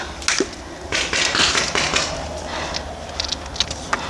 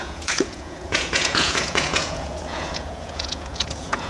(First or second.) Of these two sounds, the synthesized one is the second